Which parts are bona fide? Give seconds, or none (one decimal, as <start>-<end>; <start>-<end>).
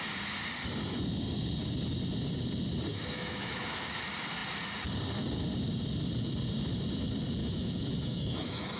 0.0-2.9; 4.0-7.4